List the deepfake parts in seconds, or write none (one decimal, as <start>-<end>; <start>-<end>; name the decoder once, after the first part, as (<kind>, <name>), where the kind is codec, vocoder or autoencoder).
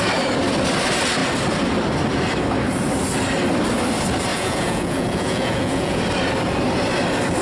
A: 4.3-6.0 (vocoder, Vocos)